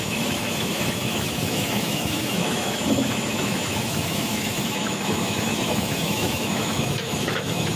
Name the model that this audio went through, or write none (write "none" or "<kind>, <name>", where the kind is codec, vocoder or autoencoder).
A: autoencoder, DAC-VAE